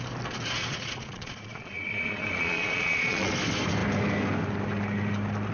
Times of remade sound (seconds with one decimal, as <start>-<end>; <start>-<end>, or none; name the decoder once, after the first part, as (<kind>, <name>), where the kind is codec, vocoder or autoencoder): 0.6-3.3 (vocoder, Vocos)